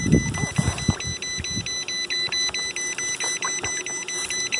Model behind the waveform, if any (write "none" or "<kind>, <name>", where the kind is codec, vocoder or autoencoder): none